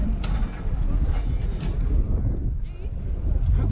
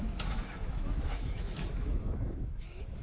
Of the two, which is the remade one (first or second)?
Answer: second